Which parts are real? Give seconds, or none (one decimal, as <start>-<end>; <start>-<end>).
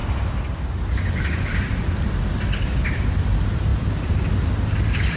0.0-0.8